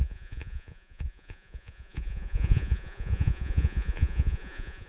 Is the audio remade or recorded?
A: remade